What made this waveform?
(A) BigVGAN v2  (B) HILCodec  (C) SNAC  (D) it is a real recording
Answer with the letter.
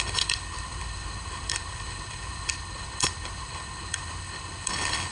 B